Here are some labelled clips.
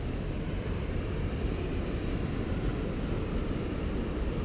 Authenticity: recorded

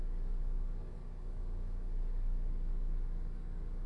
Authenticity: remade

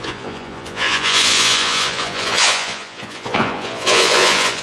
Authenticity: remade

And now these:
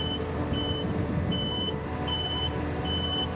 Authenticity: remade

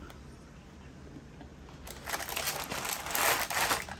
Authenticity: recorded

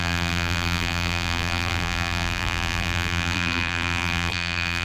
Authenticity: remade